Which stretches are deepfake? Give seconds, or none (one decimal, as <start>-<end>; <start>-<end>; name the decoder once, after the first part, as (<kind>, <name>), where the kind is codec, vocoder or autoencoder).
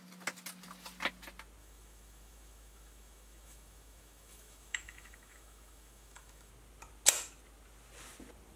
1.6-6.5 (autoencoder, DAC-VAE)